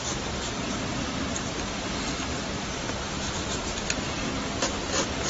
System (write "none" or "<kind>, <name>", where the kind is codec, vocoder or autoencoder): none